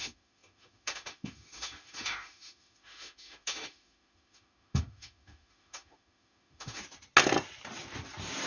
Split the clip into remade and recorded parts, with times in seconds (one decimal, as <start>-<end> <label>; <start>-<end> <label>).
0.0-6.8 remade; 6.8-8.5 recorded